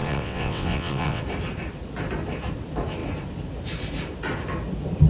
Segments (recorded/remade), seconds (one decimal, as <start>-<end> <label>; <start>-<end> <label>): 0.0-1.2 remade; 1.2-5.1 recorded